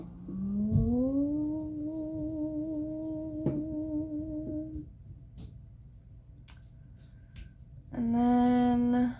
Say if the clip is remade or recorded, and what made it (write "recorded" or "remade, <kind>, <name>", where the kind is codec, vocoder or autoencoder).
recorded